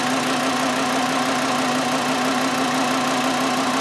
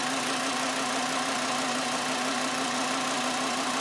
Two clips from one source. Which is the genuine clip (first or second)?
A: first